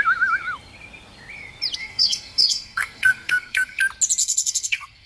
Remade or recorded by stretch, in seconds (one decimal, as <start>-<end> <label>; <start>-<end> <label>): 0.0-1.8 recorded; 1.8-3.8 remade; 3.8-4.2 recorded; 4.2-5.1 remade